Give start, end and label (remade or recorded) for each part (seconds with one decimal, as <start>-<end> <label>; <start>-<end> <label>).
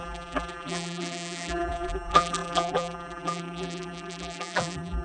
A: 0.0-5.0 remade